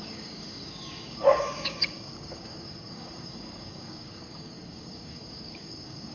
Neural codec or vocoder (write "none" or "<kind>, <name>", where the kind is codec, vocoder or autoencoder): codec, DAC